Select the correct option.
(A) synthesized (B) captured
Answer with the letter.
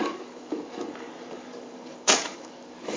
A